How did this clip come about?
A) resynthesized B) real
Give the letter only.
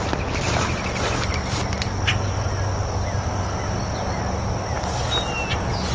B